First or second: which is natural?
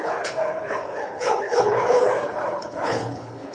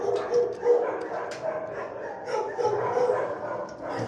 second